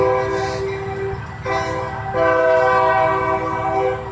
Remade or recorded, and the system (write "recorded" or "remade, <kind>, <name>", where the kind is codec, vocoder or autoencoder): recorded